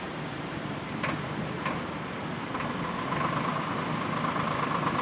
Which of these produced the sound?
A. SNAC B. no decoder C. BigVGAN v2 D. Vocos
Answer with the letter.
B